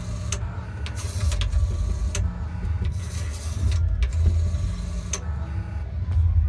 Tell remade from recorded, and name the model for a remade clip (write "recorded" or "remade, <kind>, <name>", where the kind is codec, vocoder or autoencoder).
recorded